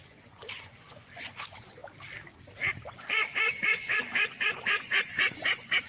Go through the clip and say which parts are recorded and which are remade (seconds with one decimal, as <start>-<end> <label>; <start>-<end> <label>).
0.0-1.8 remade; 1.8-2.8 recorded; 2.8-5.9 remade

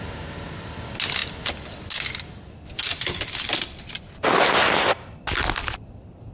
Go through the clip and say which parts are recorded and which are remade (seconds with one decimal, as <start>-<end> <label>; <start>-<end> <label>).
0.0-6.3 recorded

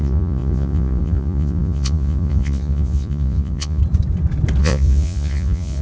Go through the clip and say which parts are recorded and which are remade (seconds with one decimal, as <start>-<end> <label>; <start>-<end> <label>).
0.0-3.8 remade; 3.8-4.6 recorded; 4.6-5.8 remade

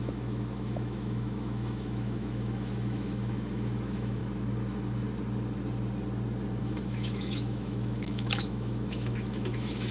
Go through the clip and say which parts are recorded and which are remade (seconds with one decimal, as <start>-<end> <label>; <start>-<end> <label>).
0.0-4.2 remade; 4.2-6.6 recorded; 6.6-9.9 remade

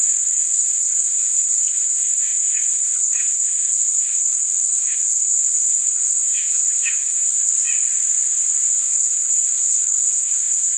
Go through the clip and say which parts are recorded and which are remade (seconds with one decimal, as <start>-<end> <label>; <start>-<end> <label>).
0.0-7.5 remade; 7.5-8.7 recorded; 8.7-10.8 remade